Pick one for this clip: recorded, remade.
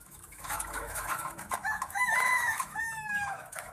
remade